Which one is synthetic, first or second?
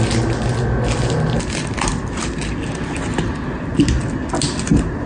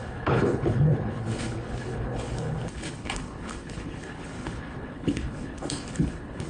second